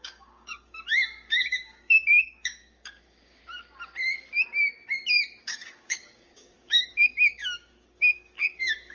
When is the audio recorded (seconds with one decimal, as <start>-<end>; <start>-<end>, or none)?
3.4-5.4

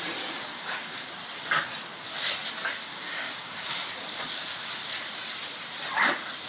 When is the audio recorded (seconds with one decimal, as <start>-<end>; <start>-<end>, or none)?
0.0-0.5; 1.1-2.9; 3.8-6.5